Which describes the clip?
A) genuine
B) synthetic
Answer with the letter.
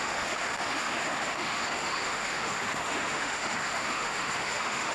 B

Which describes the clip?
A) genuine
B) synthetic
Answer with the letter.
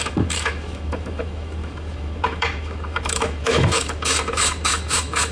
B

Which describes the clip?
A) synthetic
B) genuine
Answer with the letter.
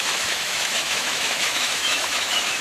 A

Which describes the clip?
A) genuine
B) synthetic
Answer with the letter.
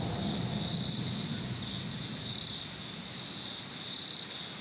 A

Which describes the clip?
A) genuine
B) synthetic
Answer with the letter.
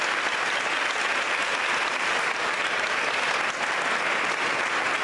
A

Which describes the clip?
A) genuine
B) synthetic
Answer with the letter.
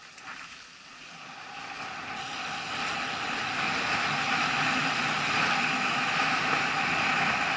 A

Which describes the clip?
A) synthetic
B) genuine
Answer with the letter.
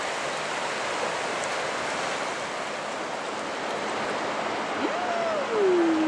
B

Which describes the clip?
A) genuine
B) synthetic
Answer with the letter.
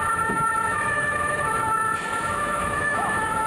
B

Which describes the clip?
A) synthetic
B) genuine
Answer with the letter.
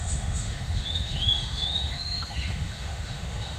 A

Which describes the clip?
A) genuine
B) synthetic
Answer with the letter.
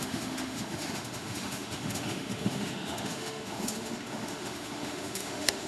B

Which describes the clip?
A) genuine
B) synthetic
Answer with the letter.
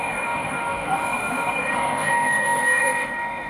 B